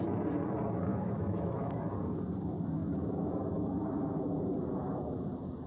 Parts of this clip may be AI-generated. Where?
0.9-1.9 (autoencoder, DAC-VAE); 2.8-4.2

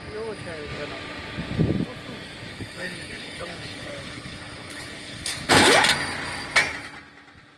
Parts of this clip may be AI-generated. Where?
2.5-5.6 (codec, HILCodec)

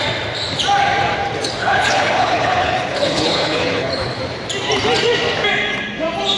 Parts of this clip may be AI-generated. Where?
1.6-4.2 (codec, HILCodec)

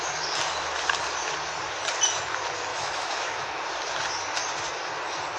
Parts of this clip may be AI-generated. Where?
2.7-3.6 (autoencoder, DAC-VAE)

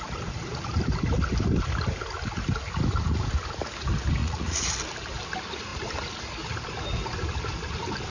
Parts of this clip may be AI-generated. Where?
4.2-4.7 (vocoder, Vocos)